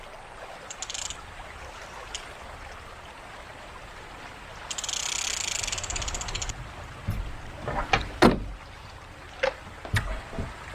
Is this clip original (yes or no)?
yes